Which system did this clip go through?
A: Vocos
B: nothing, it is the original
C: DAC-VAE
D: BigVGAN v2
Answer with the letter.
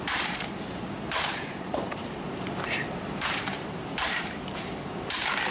D